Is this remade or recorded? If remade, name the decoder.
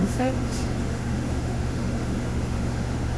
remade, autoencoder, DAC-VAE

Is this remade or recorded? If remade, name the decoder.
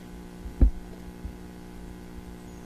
recorded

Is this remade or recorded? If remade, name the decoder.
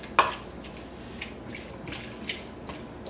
recorded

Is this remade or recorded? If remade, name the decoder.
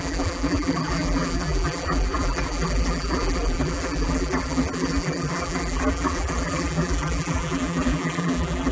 remade, vocoder, BigVGAN v2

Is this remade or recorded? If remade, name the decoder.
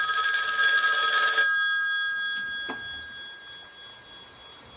recorded